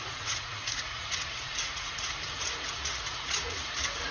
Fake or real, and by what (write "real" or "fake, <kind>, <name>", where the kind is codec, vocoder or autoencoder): fake, vocoder, Vocos